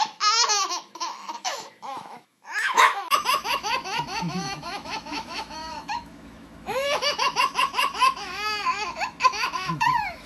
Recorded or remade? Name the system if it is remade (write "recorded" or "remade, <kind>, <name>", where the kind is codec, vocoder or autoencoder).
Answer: remade, autoencoder, DAC-VAE